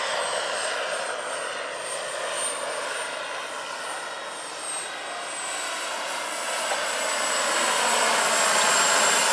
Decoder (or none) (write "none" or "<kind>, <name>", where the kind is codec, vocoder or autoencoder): none